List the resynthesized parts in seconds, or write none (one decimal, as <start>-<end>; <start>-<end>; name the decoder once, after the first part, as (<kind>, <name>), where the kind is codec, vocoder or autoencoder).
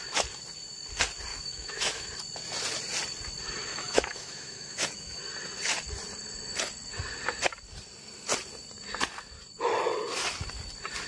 1.3-2.1 (autoencoder, DAC-VAE); 3.7-5.2